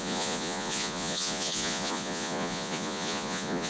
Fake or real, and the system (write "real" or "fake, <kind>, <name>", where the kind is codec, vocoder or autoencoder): fake, vocoder, Vocos